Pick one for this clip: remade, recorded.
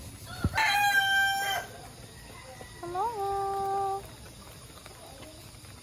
recorded